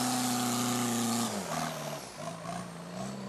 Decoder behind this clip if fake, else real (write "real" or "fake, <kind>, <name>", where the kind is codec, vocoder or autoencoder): real